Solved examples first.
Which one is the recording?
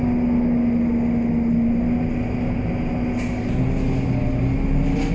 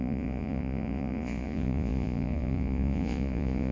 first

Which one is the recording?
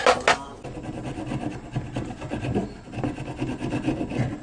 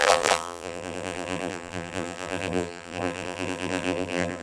first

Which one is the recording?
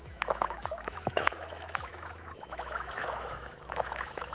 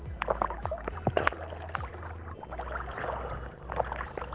second